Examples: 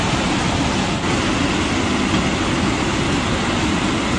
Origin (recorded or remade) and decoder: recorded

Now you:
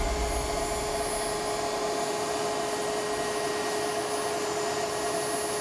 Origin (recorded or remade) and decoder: recorded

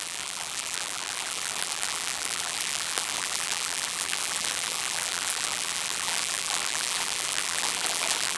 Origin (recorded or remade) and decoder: remade, vocoder, BigVGAN v2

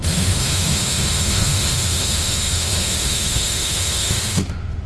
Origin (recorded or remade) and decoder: remade, autoencoder, DAC-VAE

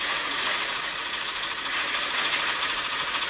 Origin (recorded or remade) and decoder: remade, vocoder, Vocos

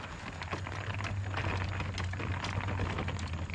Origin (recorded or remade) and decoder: recorded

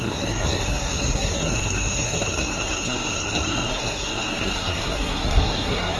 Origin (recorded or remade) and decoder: remade, codec, SNAC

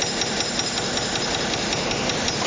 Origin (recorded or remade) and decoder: recorded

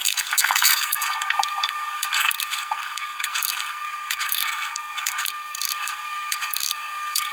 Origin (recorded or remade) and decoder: remade, codec, SNAC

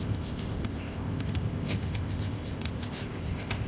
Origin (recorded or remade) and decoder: remade, codec, ZipCodec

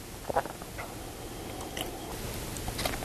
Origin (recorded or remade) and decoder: recorded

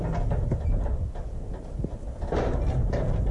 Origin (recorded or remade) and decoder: recorded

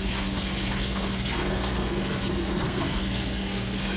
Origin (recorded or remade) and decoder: remade, codec, SNAC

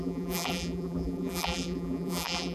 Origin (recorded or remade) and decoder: remade, vocoder, BigVGAN v2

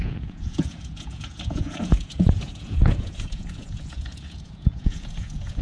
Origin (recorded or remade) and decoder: remade, vocoder, Vocos